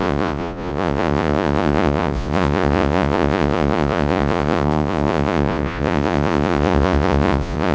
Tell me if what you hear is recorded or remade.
remade